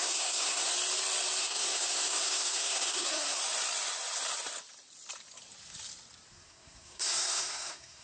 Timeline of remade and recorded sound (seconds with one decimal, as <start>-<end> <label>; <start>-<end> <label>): 0.0-0.7 remade; 0.7-1.4 recorded; 1.4-3.4 remade; 3.4-6.3 recorded; 6.3-8.0 remade